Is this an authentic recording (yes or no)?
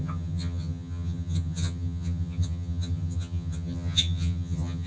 no